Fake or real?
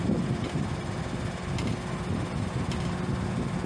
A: real